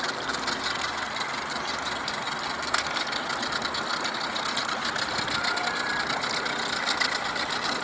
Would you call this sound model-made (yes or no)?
no